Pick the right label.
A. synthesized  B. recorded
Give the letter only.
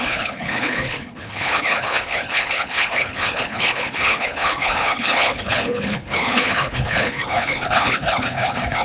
A